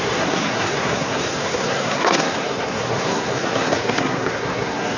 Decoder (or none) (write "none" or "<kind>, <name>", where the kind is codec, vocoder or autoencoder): codec, SNAC